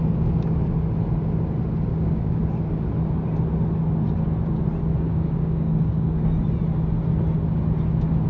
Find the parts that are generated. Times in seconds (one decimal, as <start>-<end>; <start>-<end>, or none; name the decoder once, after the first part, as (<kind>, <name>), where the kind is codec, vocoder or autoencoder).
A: 1.9-2.4 (codec, DAC); 5.1-6.2